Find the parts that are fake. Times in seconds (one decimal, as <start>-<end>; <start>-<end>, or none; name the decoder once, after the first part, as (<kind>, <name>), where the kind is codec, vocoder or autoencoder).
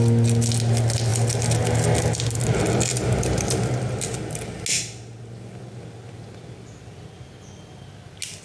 none